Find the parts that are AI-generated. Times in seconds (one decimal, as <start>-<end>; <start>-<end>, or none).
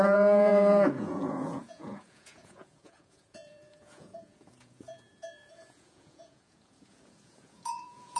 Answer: 0.0-8.2